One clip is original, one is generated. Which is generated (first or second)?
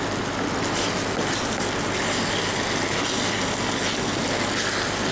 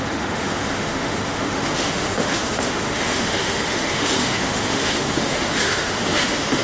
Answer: second